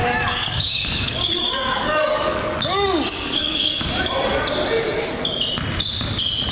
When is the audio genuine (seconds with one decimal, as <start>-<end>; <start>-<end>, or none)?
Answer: 3.9-6.5